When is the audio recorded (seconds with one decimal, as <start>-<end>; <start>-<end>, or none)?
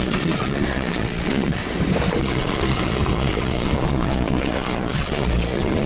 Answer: 1.6-2.2